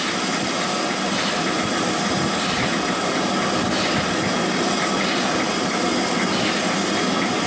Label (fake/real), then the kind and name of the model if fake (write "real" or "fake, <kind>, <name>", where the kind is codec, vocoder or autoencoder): real